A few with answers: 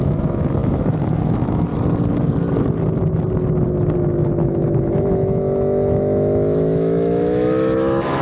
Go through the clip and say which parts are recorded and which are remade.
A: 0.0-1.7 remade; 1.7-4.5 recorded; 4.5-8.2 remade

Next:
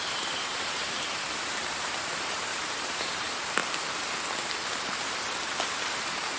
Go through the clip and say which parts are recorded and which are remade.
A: 0.0-3.6 remade; 3.6-5.5 recorded; 5.5-6.4 remade

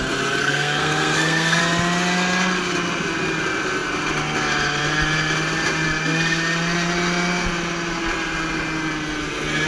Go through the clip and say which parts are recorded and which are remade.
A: 0.0-0.4 recorded; 0.4-1.6 remade; 1.6-9.7 recorded

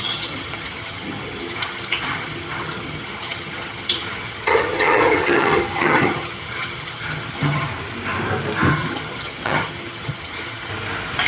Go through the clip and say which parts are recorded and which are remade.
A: 0.0-7.7 remade; 7.7-8.7 recorded; 8.7-10.7 remade; 10.7-11.3 recorded